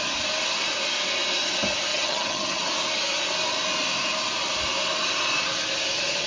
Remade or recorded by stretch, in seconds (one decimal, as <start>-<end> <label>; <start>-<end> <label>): 0.0-1.9 recorded; 1.9-2.6 remade; 2.6-6.3 recorded

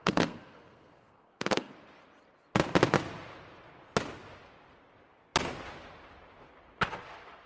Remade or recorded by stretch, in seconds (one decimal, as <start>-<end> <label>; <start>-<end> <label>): 0.0-1.7 remade; 1.7-7.5 recorded

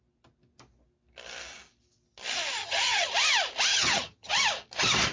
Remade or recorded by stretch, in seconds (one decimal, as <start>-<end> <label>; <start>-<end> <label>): 0.0-2.6 recorded; 2.6-3.1 remade; 3.1-3.7 recorded; 3.7-4.3 remade; 4.3-5.1 recorded

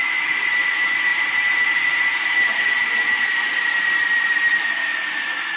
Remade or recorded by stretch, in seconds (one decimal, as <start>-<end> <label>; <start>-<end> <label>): 0.0-5.6 recorded

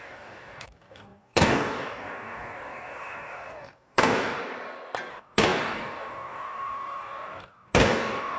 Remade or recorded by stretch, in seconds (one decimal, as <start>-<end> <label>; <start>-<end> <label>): 0.0-4.4 remade; 4.4-5.1 recorded; 5.1-8.4 remade

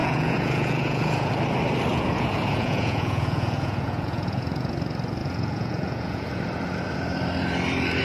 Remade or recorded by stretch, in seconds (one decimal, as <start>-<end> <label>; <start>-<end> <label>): 0.0-1.3 remade; 1.3-1.9 recorded; 1.9-4.7 remade; 4.7-5.2 recorded; 5.2-6.4 remade; 6.4-8.0 recorded

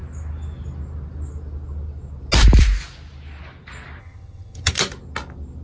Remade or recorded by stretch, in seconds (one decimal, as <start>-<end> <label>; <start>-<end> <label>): 0.0-4.0 recorded; 4.0-4.7 remade; 4.7-5.6 recorded

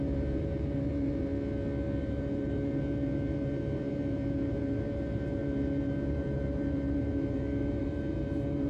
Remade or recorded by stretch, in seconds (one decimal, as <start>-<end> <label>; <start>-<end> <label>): 0.0-1.3 remade; 1.3-2.0 recorded; 2.0-8.7 remade